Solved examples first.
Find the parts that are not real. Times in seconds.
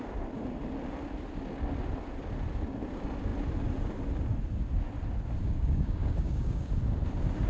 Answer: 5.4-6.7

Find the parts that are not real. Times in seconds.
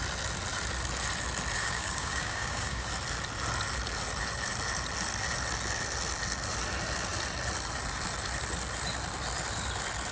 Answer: 1.6-2.9